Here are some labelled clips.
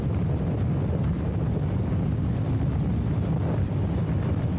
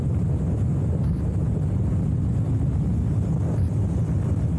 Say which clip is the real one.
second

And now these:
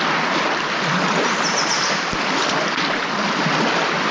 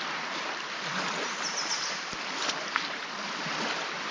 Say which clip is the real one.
first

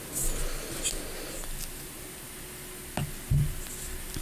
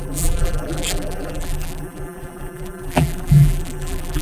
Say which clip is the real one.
first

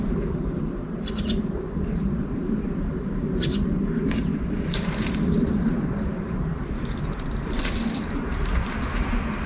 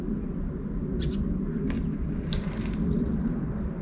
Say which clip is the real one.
second